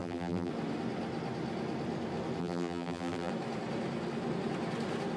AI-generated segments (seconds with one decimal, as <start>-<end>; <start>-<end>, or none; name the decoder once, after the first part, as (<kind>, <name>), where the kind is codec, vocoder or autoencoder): 0.0-0.5 (vocoder, BigVGAN v2); 2.4-3.3